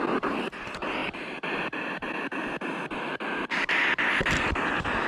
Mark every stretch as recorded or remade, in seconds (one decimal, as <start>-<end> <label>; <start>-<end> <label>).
0.0-5.1 recorded